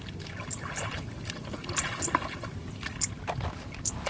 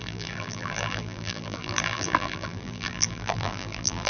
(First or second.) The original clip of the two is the first